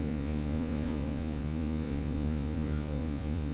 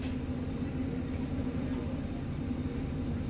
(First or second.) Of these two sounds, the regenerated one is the first